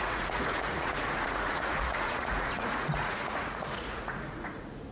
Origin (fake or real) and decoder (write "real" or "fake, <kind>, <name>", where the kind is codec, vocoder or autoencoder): fake, vocoder, Vocos